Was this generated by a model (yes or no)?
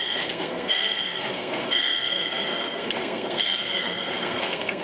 yes